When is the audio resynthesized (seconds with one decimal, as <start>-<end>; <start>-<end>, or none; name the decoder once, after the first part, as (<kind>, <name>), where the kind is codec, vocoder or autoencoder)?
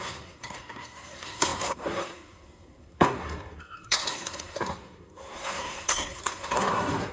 0.0-7.1 (codec, SNAC)